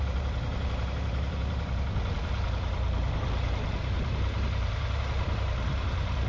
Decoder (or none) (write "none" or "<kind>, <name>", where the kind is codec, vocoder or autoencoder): vocoder, BigVGAN v2